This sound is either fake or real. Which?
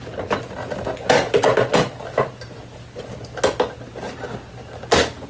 real